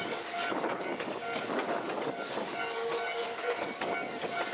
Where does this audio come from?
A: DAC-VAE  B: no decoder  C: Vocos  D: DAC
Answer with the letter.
D